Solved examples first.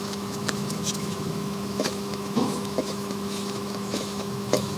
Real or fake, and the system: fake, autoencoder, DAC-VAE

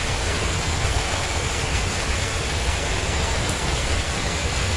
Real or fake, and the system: fake, codec, SNAC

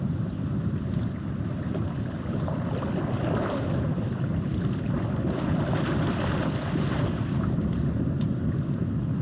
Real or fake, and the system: real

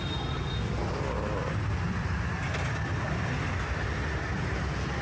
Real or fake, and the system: real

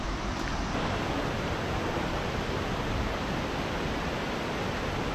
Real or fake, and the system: real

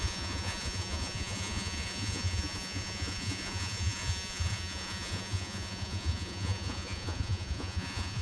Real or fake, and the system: fake, vocoder, Vocos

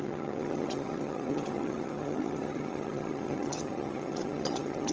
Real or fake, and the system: fake, vocoder, HiFi-GAN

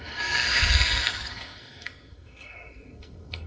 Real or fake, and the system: fake, codec, SNAC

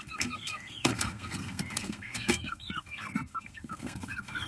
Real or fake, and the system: fake, codec, SNAC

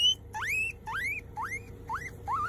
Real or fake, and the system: real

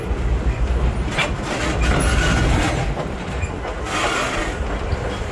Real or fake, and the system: real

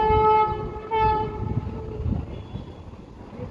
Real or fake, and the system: real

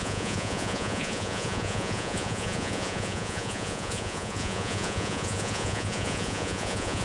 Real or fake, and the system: fake, vocoder, Vocos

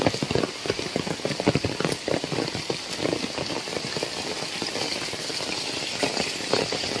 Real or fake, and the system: real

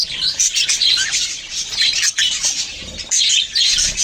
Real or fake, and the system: real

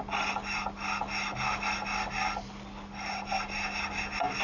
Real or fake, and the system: real